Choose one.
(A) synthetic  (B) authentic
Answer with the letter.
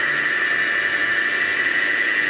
B